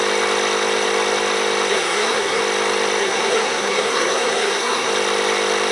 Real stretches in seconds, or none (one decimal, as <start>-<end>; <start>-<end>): 0.0-1.7; 2.4-3.0; 4.9-5.7